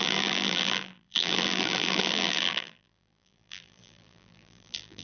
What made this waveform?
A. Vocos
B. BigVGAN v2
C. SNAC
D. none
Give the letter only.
B